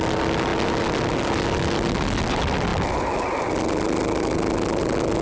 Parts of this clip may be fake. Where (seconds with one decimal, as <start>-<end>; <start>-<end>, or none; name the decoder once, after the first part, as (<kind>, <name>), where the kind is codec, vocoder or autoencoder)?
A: none